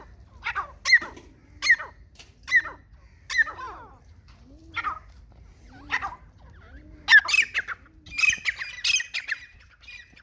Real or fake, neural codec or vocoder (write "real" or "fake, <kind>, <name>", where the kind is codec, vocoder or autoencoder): real